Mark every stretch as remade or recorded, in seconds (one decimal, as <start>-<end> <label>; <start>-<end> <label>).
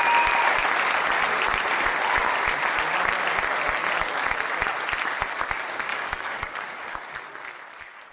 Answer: 0.0-5.9 recorded; 5.9-6.9 remade; 6.9-8.1 recorded